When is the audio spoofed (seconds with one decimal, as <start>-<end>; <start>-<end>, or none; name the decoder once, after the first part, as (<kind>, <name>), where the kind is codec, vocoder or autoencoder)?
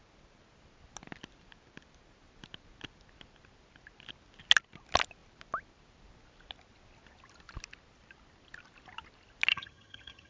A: 9.5-10.3 (vocoder, HiFi-GAN)